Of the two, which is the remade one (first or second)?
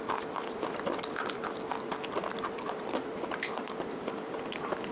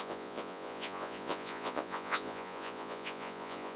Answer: second